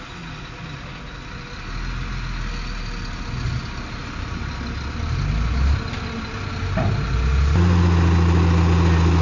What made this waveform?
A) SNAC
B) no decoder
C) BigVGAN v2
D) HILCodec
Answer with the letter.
B